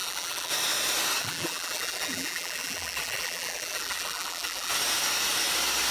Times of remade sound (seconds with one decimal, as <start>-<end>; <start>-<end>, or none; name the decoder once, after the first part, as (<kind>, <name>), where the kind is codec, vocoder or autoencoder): 0.0-0.5 (vocoder, BigVGAN v2); 1.2-4.7